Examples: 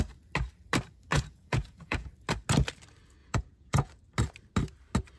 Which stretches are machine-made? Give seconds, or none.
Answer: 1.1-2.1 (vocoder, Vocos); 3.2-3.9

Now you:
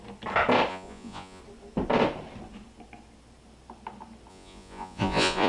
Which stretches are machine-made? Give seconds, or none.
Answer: 0.7-1.4 (vocoder, Vocos); 4.3-5.5

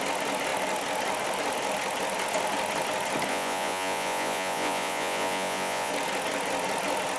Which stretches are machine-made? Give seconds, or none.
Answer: 3.3-5.9 (vocoder, Vocos)